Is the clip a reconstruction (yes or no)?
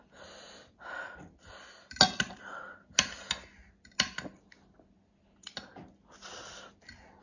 no